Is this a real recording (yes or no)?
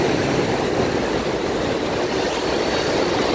yes